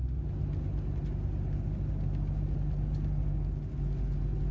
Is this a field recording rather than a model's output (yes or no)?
yes